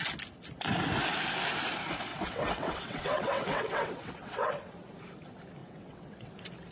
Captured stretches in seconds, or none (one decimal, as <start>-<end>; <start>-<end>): 0.0-2.1; 4.5-5.6; 6.3-6.7